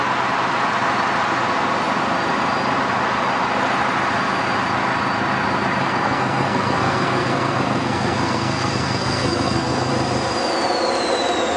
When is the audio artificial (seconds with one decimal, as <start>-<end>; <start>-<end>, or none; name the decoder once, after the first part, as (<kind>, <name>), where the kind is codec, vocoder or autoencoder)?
5.8-9.9 (codec, SNAC)